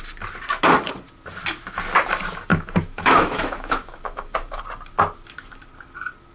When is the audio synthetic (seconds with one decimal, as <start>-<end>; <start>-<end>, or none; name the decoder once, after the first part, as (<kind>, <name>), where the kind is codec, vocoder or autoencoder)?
2.5-4.6 (autoencoder, DAC-VAE)